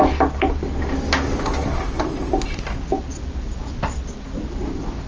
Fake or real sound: real